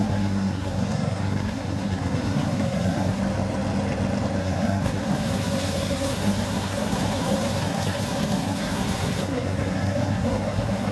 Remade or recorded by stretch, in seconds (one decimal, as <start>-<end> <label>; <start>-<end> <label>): 0.0-3.2 remade; 3.2-4.4 recorded; 4.4-10.9 remade